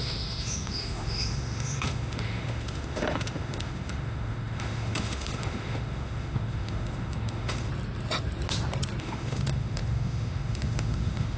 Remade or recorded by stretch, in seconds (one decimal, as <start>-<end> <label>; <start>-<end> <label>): 0.0-7.7 remade; 7.7-9.0 recorded; 9.0-11.4 remade